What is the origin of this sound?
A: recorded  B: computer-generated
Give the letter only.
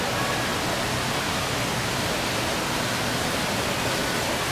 A